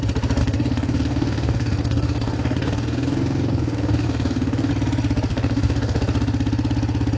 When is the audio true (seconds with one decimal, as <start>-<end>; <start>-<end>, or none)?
0.0-0.4; 4.7-5.3; 6.0-7.2